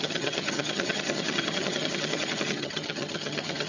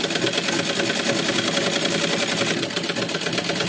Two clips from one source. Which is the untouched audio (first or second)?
second